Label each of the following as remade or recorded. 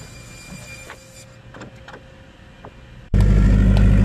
recorded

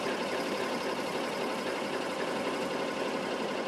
recorded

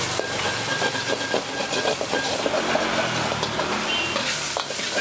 recorded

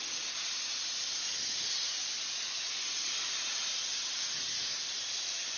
recorded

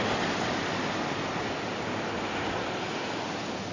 recorded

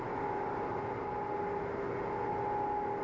recorded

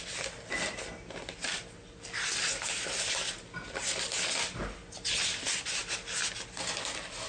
recorded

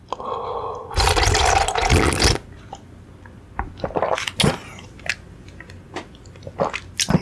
recorded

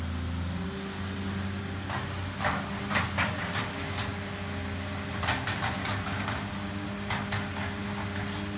recorded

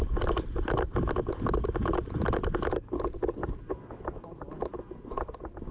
recorded